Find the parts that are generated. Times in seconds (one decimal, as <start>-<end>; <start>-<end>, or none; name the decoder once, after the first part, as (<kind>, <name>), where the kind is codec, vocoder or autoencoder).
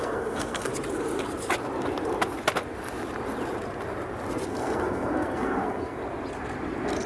0.0-0.7 (codec, SNAC); 4.5-6.0